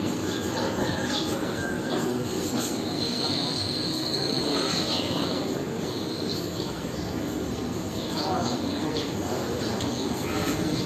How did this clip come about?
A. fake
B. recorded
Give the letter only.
A